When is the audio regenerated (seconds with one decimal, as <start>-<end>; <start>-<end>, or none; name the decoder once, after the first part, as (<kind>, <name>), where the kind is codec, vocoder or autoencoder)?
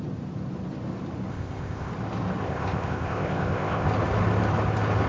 1.3-1.9 (codec, ZipCodec); 2.4-3.9